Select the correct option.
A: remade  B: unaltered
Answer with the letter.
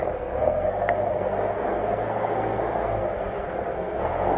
A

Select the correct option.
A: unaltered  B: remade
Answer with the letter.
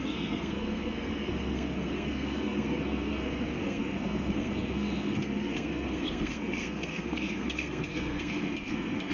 B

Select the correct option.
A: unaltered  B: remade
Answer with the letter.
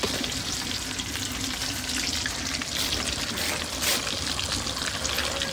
A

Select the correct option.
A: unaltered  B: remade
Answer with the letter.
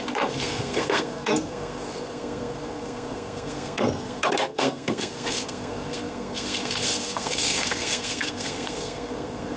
B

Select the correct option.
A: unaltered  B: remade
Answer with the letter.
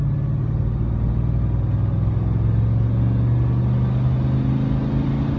A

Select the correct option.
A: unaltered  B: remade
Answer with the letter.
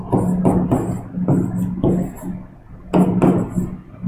A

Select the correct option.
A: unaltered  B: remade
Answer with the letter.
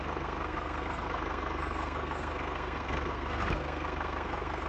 B